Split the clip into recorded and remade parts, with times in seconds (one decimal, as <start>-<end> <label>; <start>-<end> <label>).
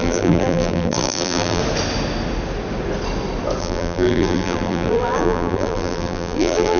0.0-1.6 remade; 1.6-3.6 recorded; 3.6-6.8 remade